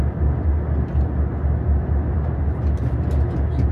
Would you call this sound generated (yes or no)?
no